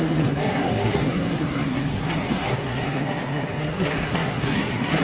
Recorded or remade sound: remade